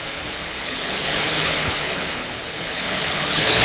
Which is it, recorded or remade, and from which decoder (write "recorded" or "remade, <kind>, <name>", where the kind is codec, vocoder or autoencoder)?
remade, codec, HILCodec